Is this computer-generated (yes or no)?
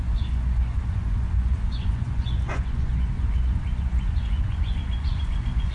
yes